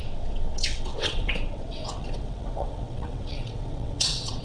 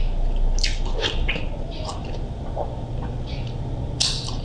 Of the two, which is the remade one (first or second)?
first